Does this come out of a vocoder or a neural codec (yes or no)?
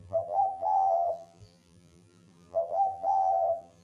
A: yes